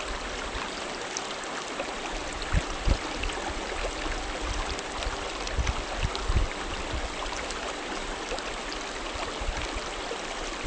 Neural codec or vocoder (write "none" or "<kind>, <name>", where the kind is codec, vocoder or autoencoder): none